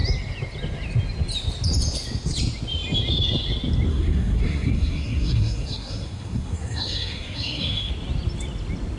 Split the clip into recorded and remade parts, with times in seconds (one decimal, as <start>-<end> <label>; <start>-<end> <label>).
0.0-3.9 recorded; 3.9-7.9 remade; 7.9-9.0 recorded